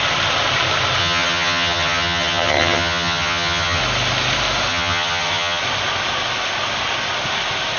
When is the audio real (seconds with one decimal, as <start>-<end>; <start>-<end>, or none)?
0.0-1.0; 3.8-4.7; 5.6-7.8